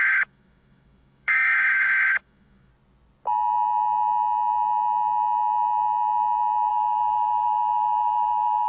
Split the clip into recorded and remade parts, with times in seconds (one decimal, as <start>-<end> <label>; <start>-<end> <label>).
0.0-2.7 remade; 2.7-6.7 recorded; 6.7-8.7 remade